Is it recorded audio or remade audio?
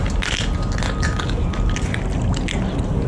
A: recorded